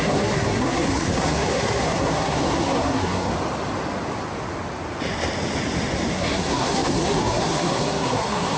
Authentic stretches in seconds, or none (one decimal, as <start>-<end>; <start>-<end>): 3.3-6.1